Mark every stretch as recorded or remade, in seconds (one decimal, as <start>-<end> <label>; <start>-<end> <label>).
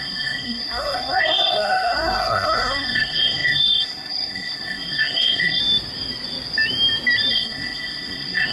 0.0-5.6 remade; 5.6-7.3 recorded; 7.3-8.5 remade